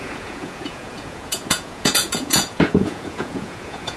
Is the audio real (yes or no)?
no